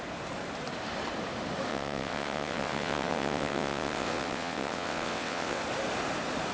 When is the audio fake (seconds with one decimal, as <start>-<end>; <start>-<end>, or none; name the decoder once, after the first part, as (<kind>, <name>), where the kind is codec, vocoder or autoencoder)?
1.7-5.6 (vocoder, WaveNeXt)